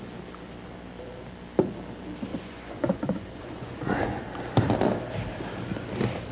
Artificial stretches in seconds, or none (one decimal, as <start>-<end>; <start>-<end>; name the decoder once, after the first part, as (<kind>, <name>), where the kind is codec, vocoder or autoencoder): 2.3-4.2 (vocoder, Vocos)